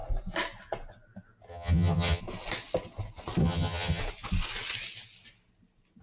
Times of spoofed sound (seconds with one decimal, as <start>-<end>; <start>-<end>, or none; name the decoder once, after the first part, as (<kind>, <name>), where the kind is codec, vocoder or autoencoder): 1.5-2.2 (vocoder, HiFi-GAN); 3.4-4.0